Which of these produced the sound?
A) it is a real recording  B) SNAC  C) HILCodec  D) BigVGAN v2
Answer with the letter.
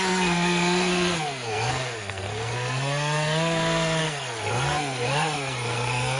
B